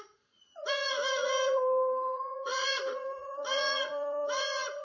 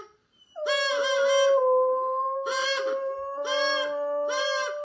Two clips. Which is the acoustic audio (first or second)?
second